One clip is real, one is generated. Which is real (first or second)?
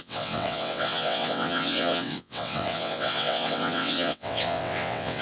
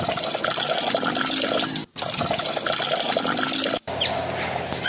second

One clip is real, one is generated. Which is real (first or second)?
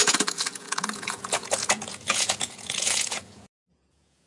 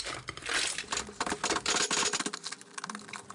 second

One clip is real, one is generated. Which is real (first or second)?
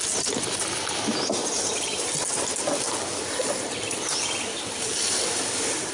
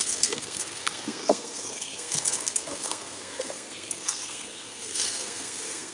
first